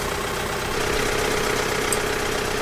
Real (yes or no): yes